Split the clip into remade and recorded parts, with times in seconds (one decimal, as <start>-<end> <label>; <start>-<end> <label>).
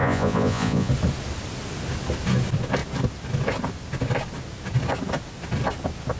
0.0-0.9 remade; 0.9-6.2 recorded